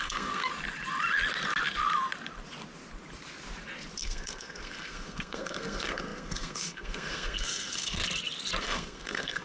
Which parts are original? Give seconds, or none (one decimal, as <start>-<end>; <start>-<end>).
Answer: 0.5-4.0; 8.0-8.6